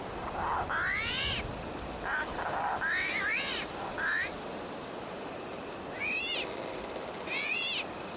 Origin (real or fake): real